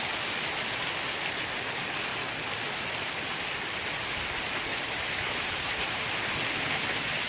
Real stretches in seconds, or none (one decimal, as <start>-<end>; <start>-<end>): 0.0-4.7; 6.3-7.3